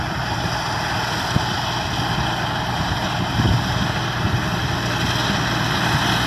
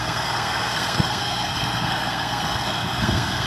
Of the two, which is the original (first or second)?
first